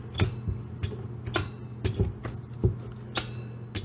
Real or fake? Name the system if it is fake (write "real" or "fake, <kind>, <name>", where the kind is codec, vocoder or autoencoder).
real